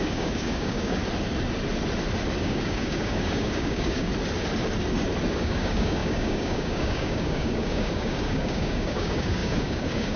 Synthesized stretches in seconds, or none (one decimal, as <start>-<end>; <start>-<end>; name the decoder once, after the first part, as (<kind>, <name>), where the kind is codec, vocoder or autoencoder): 0.0-1.0 (codec, DAC); 2.4-4.1; 5.3-10.2